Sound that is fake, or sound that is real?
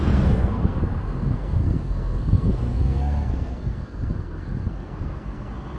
fake